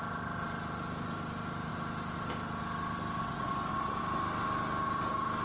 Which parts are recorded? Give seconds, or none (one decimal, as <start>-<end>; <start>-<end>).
0.0-3.2; 4.0-5.4